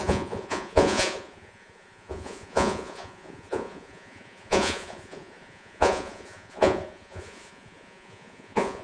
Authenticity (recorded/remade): remade